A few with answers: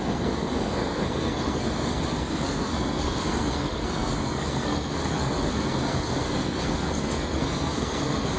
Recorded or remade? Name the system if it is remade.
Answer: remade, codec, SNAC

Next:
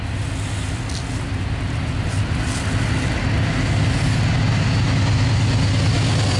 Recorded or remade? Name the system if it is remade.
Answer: recorded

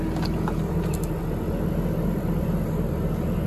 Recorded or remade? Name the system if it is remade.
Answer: recorded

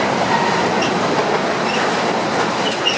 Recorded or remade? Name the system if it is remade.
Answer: recorded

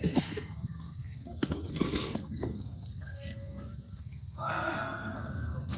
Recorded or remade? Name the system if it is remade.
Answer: remade, codec, SNAC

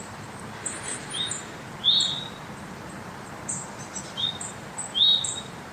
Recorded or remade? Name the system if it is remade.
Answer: recorded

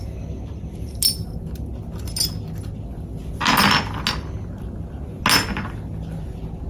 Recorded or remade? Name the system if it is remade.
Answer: recorded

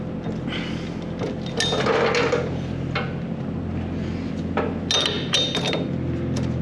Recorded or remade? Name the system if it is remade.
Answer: recorded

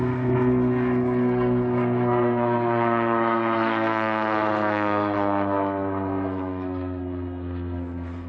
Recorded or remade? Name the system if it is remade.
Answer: remade, codec, SNAC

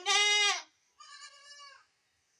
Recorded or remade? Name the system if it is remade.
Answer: recorded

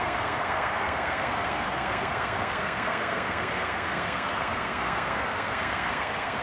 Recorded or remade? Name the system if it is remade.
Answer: remade, codec, SNAC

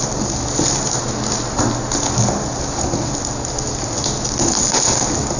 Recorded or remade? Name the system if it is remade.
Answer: recorded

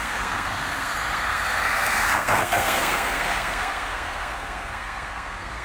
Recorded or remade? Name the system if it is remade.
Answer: remade, codec, SNAC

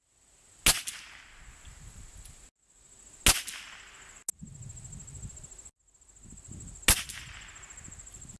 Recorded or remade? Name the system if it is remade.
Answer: recorded